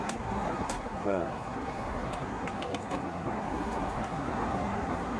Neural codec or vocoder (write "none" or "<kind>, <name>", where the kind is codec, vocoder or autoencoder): codec, SNAC